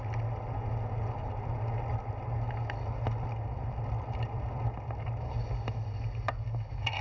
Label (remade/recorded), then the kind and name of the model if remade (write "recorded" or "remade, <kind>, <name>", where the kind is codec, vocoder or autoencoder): recorded